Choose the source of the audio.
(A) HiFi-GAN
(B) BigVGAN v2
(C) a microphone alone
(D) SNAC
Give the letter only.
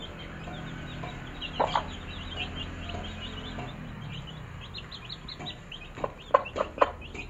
C